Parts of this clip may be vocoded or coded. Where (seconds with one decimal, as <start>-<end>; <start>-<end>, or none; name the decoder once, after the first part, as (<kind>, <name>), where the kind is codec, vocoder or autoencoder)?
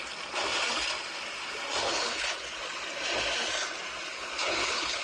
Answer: 1.8-2.6 (codec, HILCodec); 4.1-5.0